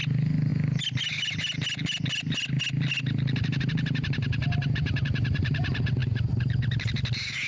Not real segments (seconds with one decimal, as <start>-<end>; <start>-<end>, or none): none